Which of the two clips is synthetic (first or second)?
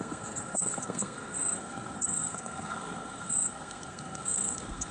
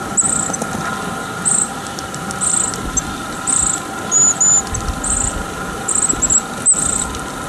first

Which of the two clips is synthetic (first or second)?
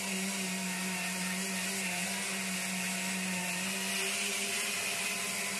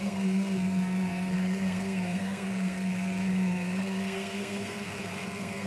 second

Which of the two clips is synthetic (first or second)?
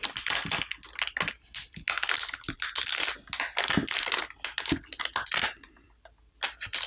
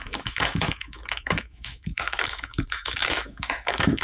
second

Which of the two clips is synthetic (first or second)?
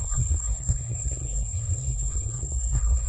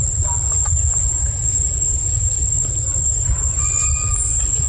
first